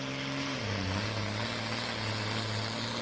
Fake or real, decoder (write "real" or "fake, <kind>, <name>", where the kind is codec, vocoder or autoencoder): real